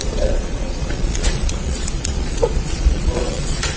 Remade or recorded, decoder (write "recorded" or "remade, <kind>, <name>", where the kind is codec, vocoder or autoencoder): remade, vocoder, Vocos